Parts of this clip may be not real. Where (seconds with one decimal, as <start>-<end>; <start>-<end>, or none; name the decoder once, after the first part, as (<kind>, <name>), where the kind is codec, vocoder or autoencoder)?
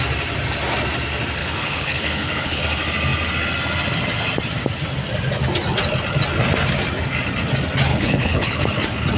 1.4-2.6 (codec, HILCodec); 7.9-8.6